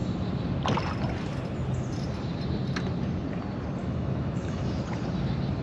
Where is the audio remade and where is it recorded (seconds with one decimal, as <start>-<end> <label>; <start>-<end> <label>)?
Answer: 0.0-3.8 recorded; 3.8-4.8 remade; 4.8-5.6 recorded

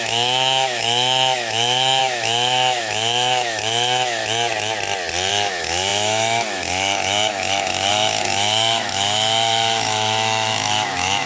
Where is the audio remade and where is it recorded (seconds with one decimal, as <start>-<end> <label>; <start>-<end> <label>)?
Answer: 0.0-4.2 remade; 4.2-5.3 recorded; 5.3-11.3 remade

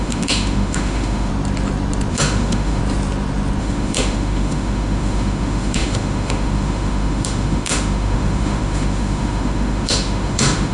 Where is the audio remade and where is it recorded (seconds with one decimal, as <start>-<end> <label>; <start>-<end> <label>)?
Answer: 0.0-1.3 remade; 1.3-2.1 recorded; 2.1-2.8 remade; 2.8-3.6 recorded; 3.6-10.7 remade